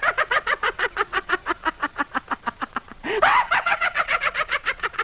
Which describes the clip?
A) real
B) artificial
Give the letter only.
B